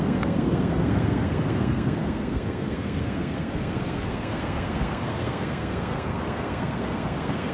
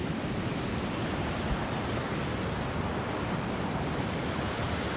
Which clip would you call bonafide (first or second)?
second